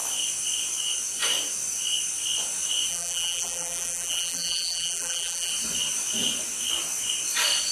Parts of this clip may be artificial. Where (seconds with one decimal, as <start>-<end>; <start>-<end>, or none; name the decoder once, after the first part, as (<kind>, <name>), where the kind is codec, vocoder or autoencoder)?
2.9-5.5 (vocoder, BigVGAN v2)